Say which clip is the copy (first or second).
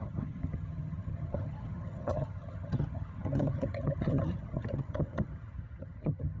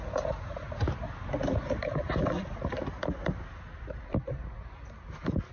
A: first